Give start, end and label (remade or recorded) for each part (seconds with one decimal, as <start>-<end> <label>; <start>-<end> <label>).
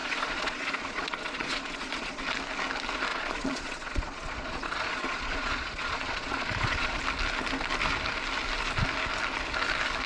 0.0-2.2 remade; 2.2-3.1 recorded; 3.1-7.0 remade; 7.0-10.1 recorded